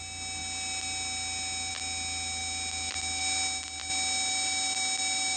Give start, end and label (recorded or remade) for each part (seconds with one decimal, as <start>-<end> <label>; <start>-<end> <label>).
0.0-5.4 recorded